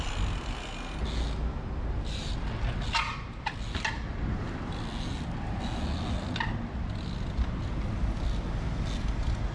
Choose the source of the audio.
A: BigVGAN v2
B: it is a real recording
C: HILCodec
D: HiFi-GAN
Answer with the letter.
B